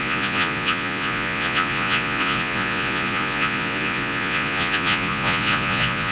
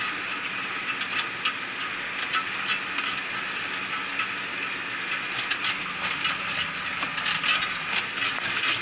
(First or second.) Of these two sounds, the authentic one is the second